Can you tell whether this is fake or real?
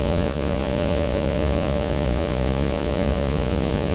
fake